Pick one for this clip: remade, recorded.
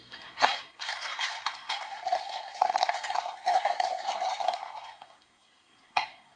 remade